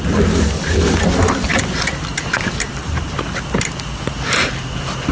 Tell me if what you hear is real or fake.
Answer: real